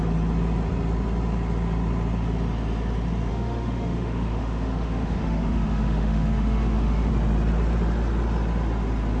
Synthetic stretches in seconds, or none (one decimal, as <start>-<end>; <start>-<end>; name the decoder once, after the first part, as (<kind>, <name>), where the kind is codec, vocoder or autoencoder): 3.3-7.1 (autoencoder, DAC-VAE)